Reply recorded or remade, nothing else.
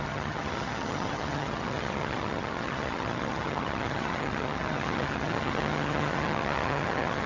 remade